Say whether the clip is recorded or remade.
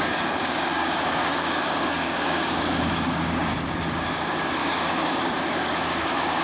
remade